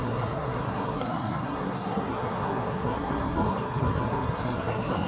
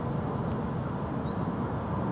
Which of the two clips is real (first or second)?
second